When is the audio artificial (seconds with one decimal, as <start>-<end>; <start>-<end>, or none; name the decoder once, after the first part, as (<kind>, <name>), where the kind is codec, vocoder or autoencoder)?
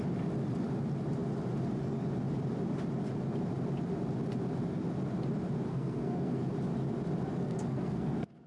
5.7-6.5 (codec, SNAC); 7.4-8.5